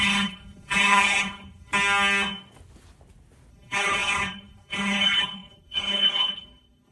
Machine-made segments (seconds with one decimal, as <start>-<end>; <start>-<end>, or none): 0.0-1.7; 3.5-6.9